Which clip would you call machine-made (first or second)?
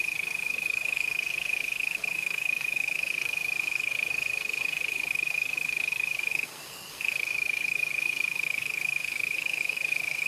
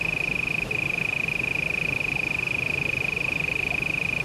first